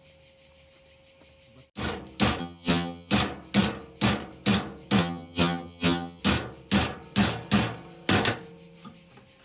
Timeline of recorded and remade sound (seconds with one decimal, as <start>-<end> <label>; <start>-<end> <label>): 0.0-2.4 recorded; 2.4-3.1 remade; 3.1-5.0 recorded; 5.0-6.2 remade; 6.2-9.4 recorded